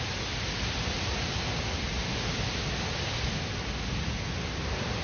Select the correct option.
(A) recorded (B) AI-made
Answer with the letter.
A